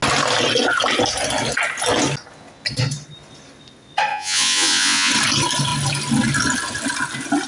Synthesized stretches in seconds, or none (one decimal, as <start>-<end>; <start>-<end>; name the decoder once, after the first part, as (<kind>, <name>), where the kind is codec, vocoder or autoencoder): 4.1-5.1 (vocoder, Vocos)